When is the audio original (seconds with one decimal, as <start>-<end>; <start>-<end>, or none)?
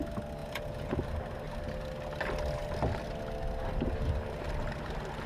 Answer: 0.0-0.4; 1.0-5.3